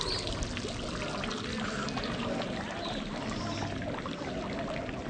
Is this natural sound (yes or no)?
yes